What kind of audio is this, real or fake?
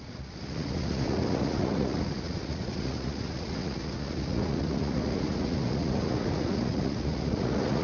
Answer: fake